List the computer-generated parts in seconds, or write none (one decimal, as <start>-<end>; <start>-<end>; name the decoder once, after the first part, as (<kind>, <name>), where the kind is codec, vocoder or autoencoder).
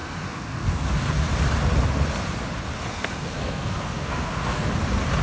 0.0-1.1 (codec, SNAC); 2.9-4.7